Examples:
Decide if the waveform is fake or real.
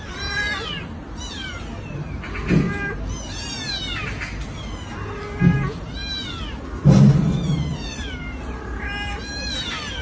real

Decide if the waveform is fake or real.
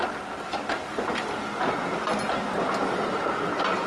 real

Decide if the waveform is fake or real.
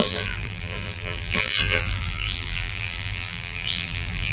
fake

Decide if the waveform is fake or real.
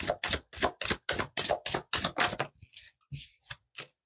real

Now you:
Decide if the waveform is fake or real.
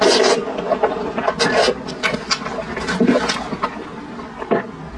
real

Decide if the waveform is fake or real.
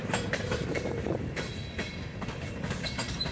fake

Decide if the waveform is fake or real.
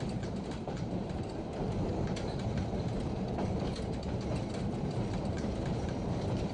fake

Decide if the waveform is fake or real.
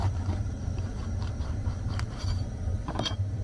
fake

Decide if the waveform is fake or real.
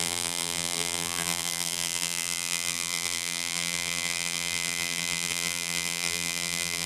fake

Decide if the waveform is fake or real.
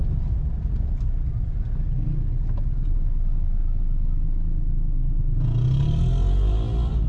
real